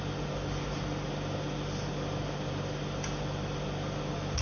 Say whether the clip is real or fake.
real